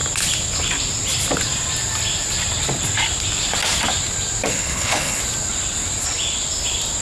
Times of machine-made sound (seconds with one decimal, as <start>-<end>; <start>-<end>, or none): 4.5-5.2